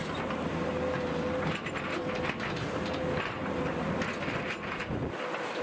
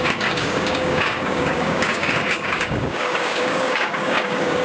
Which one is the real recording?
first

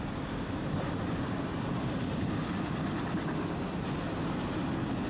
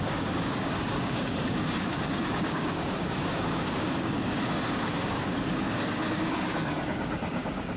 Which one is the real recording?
first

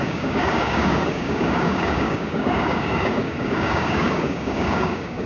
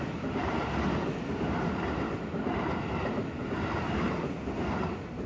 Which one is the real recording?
second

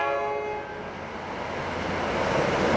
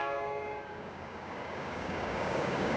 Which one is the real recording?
first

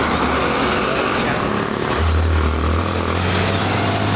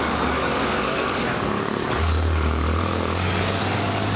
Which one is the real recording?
first